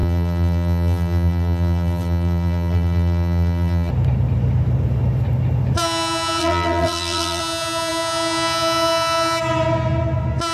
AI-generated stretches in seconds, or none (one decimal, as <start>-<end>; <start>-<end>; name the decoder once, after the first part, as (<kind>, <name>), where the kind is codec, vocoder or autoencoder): 0.0-3.9 (vocoder, BigVGAN v2); 6.4-7.4